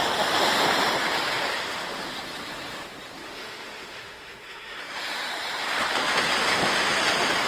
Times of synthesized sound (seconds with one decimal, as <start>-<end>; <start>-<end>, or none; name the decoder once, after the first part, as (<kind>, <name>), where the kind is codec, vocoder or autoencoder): 3.2-4.8 (autoencoder, DAC-VAE)